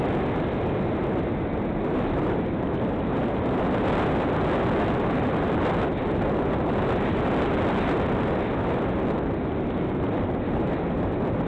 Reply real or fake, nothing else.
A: real